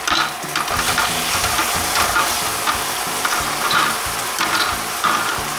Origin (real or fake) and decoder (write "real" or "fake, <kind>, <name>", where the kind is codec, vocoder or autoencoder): real